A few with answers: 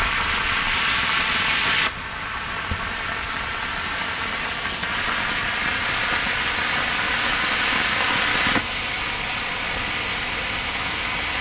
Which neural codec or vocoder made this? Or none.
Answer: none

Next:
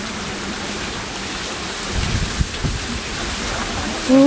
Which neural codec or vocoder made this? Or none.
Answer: none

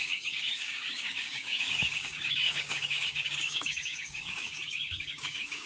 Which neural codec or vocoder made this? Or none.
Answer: codec, DAC